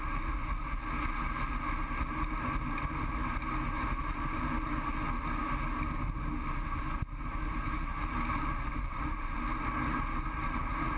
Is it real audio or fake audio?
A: real